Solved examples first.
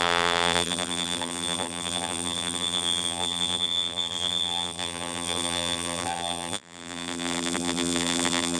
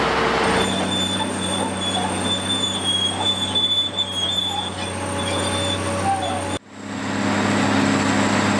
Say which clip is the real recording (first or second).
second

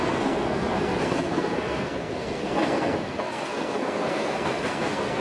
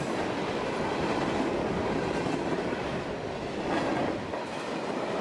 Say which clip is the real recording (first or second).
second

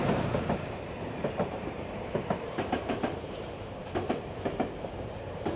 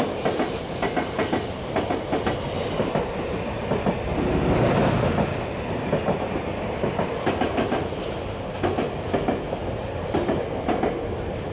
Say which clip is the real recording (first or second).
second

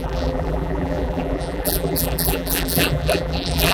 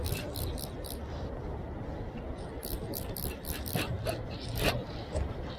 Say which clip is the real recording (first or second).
second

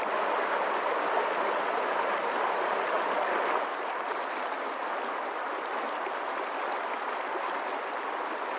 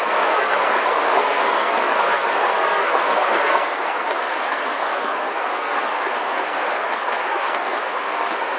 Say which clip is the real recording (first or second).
first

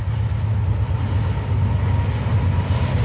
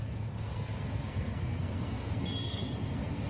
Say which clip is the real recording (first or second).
first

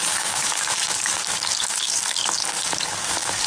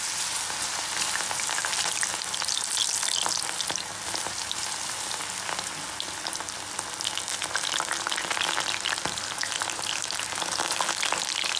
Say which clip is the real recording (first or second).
second